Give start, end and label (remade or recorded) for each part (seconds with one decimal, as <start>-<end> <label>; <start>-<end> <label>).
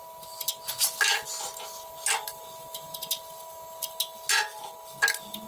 0.0-5.5 recorded